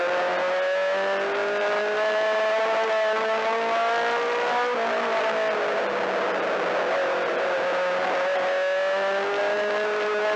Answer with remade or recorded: recorded